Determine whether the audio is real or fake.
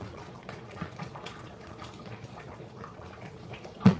fake